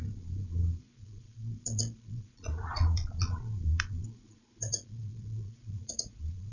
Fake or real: fake